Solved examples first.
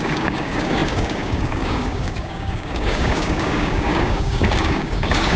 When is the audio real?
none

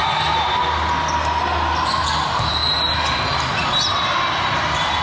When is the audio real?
0.0-5.0

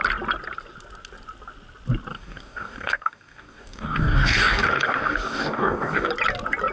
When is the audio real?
0.0-2.1; 6.1-6.7

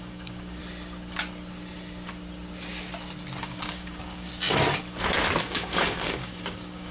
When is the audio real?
0.6-3.4; 4.3-5.4

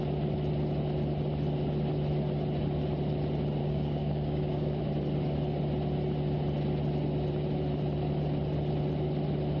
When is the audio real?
0.0-3.6; 4.8-9.6

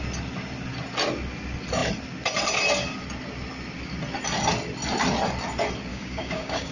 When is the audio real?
0.0-5.9